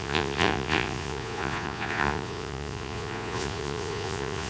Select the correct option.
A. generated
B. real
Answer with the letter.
A